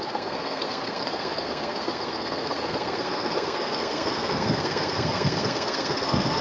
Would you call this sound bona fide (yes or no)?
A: no